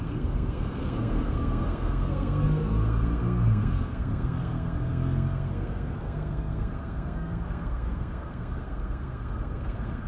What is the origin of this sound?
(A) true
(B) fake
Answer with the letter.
B